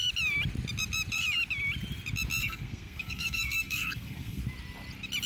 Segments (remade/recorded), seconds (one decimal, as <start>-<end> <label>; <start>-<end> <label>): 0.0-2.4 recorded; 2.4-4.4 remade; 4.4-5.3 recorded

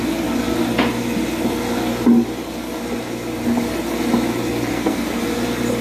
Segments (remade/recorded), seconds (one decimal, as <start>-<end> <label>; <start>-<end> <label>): 0.0-4.7 recorded; 4.7-5.2 remade; 5.2-5.8 recorded

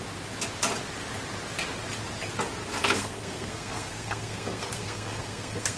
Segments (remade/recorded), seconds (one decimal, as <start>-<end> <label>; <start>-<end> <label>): 0.0-2.8 recorded; 2.8-5.8 remade

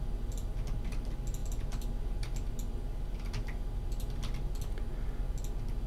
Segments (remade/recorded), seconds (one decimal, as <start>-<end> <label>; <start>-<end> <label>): 0.0-5.9 recorded

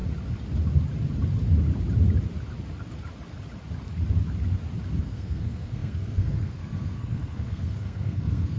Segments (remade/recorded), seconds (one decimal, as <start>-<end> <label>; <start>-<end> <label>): 0.0-5.0 recorded; 5.0-8.6 remade

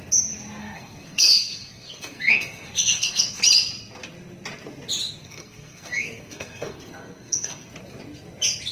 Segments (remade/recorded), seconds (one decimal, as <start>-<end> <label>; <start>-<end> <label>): 0.0-0.6 recorded; 0.6-3.4 remade; 3.4-5.2 recorded; 5.2-7.7 remade; 7.7-8.7 recorded

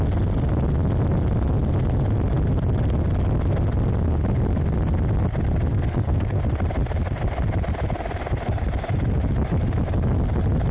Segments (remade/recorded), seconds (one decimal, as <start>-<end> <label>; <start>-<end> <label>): 0.0-5.7 recorded; 5.7-6.4 remade; 6.4-10.7 recorded